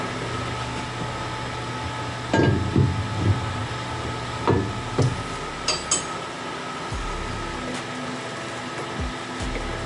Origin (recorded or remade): recorded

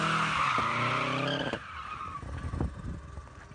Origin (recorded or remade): recorded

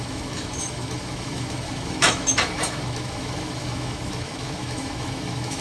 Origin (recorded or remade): remade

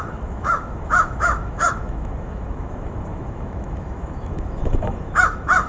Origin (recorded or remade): remade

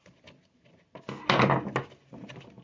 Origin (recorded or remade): recorded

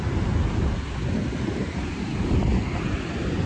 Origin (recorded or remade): recorded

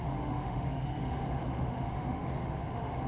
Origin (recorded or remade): remade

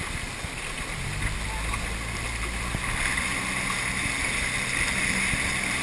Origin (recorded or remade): recorded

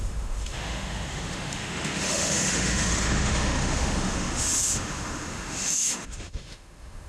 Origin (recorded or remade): remade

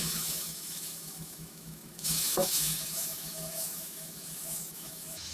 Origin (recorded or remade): remade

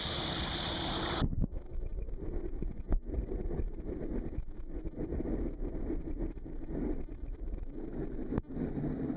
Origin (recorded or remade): recorded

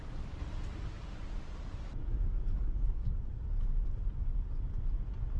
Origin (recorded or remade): recorded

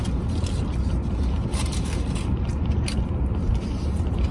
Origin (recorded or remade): recorded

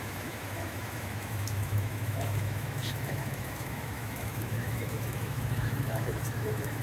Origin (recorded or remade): remade